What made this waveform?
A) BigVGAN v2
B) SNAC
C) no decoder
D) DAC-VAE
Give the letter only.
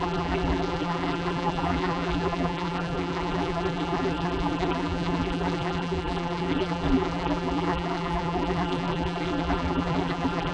A